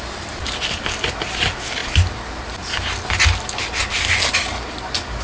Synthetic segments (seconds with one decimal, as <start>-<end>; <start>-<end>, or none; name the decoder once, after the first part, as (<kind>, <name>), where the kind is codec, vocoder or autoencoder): none